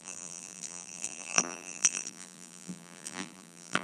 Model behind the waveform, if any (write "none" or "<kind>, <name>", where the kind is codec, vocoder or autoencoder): vocoder, BigVGAN v2